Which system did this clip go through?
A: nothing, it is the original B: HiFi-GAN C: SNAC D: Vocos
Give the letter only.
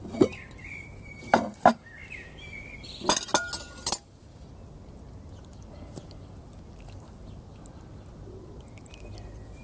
A